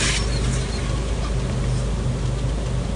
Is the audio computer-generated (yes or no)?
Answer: no